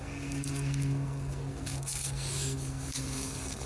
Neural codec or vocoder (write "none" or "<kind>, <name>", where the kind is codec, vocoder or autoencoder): codec, SNAC